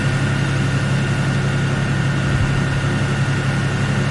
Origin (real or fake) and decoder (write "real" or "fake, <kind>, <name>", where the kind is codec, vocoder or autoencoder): real